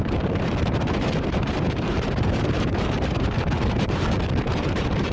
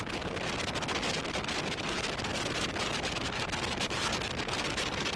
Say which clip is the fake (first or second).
first